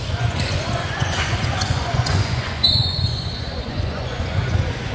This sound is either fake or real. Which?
fake